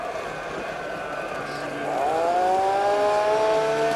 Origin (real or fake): real